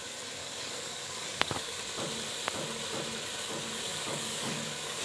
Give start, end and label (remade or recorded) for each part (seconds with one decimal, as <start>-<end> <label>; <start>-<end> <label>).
0.0-0.4 recorded; 0.4-1.8 remade; 1.8-3.9 recorded; 3.9-5.0 remade